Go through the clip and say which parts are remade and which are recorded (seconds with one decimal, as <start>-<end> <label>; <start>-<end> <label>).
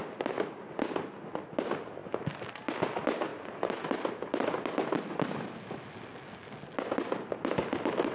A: 0.0-8.1 recorded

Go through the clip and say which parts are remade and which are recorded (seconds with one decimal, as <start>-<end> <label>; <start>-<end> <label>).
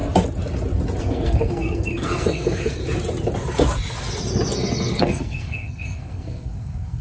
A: 0.0-1.0 recorded; 1.0-2.8 remade; 2.8-5.0 recorded; 5.0-7.0 remade